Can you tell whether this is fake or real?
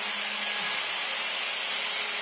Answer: real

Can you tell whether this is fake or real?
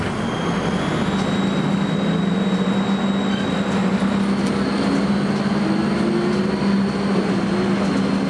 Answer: real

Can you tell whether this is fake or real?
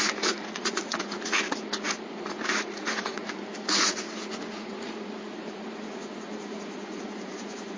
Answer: fake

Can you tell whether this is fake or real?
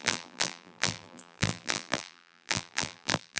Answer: fake